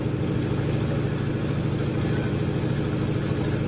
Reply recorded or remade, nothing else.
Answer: recorded